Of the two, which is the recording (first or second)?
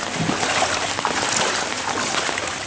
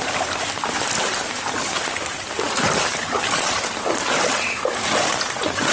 first